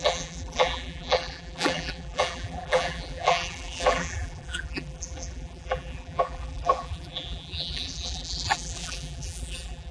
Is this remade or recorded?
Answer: remade